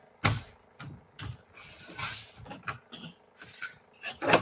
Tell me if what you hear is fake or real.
real